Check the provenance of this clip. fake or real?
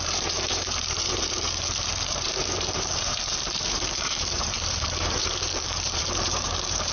fake